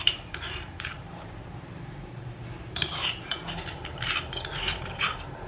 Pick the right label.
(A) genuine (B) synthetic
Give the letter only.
B